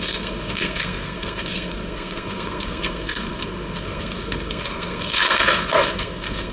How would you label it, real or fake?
fake